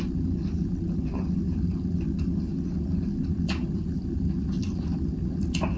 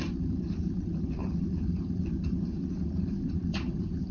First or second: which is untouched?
first